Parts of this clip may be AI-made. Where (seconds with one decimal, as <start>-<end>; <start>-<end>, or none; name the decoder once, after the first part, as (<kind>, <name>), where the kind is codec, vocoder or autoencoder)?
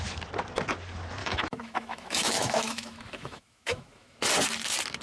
1.2-4.2 (autoencoder, DAC-VAE)